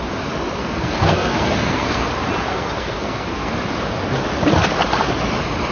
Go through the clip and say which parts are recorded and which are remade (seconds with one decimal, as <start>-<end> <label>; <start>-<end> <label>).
0.0-0.6 recorded; 0.6-2.1 remade; 2.1-2.5 recorded; 2.5-3.5 remade; 3.5-5.7 recorded